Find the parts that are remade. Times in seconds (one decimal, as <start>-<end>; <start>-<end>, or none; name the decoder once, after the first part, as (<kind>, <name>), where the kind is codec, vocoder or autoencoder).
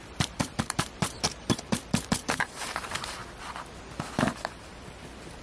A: 0.0-3.2 (vocoder, BigVGAN v2); 4.3-5.4